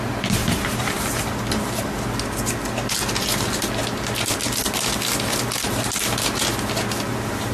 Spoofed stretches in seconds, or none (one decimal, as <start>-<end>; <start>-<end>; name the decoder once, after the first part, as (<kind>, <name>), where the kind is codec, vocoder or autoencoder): 0.4-1.3 (vocoder, BigVGAN v2)